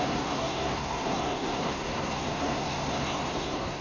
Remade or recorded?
remade